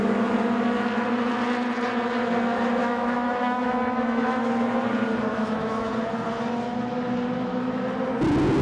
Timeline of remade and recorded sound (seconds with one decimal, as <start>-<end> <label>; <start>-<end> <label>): 0.0-2.8 recorded; 2.8-4.4 remade; 4.4-5.3 recorded; 5.3-5.9 remade; 5.9-8.6 recorded